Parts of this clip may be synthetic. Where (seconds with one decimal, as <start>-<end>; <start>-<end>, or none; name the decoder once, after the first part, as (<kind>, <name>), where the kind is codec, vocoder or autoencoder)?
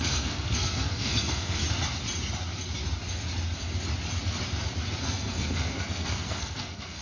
0.0-1.6 (codec, SNAC); 5.0-7.0